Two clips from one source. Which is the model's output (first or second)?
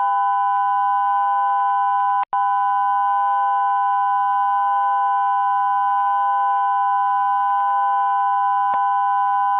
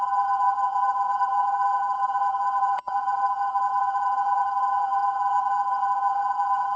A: second